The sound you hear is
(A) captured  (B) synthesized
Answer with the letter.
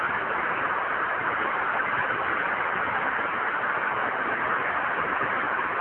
A